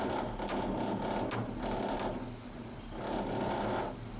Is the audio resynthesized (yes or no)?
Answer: no